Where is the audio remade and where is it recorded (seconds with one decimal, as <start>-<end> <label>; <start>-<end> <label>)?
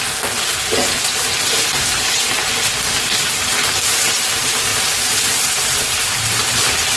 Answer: 0.0-7.0 recorded